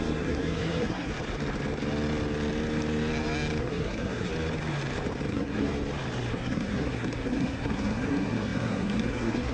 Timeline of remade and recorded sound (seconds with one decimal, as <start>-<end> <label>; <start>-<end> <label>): 0.0-1.1 remade; 1.1-3.6 recorded; 3.6-4.3 remade; 4.3-5.3 recorded; 5.3-5.7 remade; 5.7-6.3 recorded; 6.3-9.5 remade